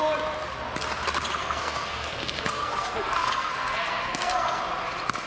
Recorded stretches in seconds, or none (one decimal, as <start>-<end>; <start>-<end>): 0.0-1.4; 4.6-5.3